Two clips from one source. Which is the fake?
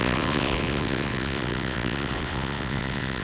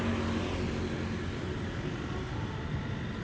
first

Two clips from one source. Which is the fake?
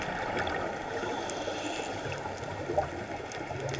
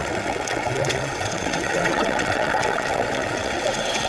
second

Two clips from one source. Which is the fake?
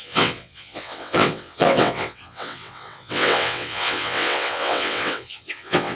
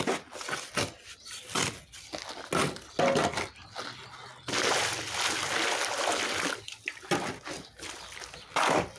first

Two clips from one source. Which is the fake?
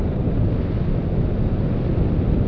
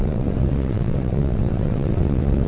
second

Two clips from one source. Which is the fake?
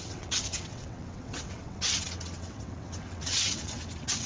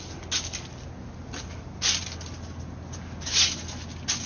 first